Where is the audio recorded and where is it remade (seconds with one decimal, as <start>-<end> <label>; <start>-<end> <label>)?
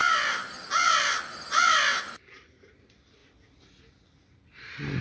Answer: 0.0-3.2 remade; 3.2-5.0 recorded